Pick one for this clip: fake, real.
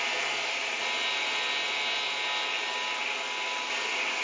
real